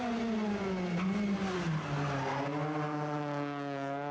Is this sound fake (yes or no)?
no